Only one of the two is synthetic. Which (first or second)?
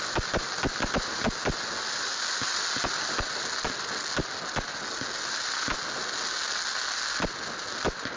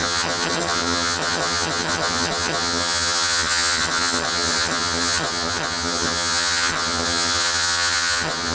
second